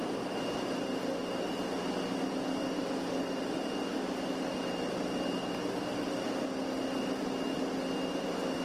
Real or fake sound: real